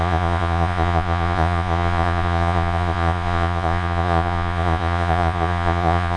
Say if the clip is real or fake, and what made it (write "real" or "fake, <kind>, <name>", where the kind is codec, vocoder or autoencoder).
fake, vocoder, Vocos